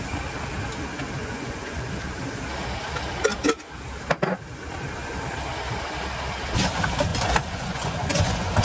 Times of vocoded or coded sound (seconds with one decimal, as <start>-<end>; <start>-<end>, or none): 1.2-1.9; 7.1-8.6